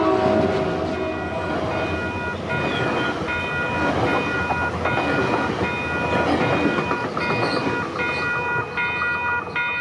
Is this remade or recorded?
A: recorded